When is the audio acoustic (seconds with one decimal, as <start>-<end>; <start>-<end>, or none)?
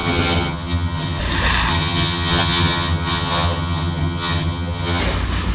1.2-1.7; 5.0-5.5